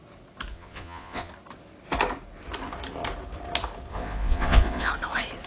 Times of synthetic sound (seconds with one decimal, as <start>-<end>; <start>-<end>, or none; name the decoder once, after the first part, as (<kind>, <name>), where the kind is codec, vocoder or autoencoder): 0.5-1.3 (vocoder, Vocos); 3.9-4.9